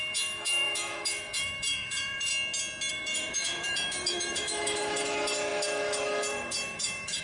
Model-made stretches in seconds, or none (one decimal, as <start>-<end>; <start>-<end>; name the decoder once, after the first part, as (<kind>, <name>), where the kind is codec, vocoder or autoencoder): 0.0-2.3 (autoencoder, DAC-VAE); 2.9-7.2